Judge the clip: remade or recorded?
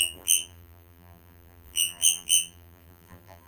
remade